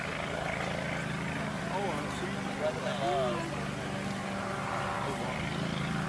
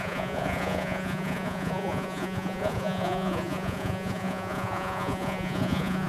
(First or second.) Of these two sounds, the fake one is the second